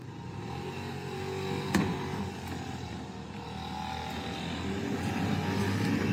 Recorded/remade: recorded